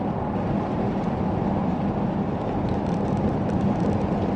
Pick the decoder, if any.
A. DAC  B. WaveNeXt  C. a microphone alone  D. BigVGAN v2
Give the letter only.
C